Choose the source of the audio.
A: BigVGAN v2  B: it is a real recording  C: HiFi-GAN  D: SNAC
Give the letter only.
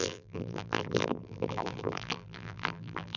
A